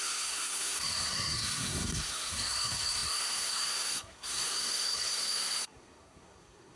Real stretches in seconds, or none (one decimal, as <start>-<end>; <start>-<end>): none